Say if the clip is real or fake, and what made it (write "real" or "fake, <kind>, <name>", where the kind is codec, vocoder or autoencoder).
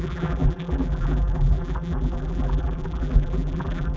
fake, vocoder, BigVGAN v2